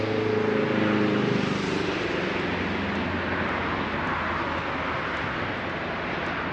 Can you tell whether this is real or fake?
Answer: real